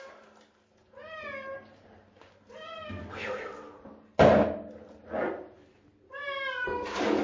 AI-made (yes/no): no